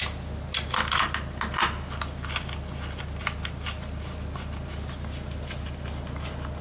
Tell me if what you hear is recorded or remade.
recorded